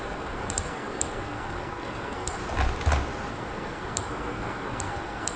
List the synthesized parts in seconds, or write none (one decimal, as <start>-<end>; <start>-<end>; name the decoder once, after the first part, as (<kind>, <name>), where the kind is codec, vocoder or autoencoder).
0.0-2.4 (codec, SNAC); 3.3-5.4